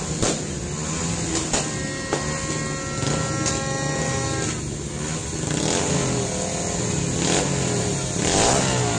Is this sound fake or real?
real